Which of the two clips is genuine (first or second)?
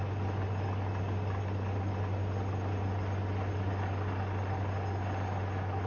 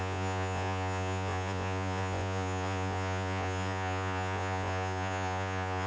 first